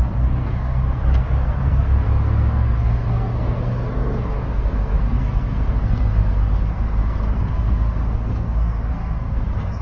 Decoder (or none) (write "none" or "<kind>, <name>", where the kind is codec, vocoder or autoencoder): codec, SNAC